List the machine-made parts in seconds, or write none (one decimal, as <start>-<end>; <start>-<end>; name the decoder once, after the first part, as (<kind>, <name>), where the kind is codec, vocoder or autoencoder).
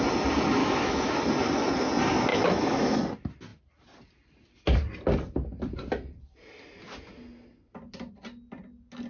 0.6-1.2 (autoencoder, DAC-VAE); 2.3-3.0